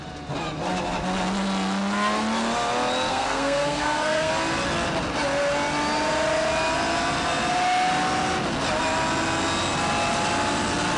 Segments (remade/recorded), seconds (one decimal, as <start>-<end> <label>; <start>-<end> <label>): 0.0-3.1 recorded; 3.1-4.3 remade; 4.3-11.0 recorded